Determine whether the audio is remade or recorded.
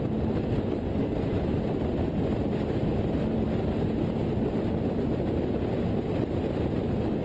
recorded